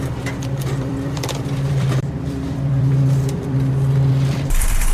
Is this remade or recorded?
remade